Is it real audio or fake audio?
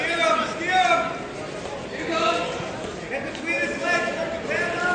real